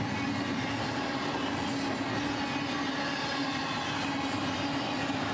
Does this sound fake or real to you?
real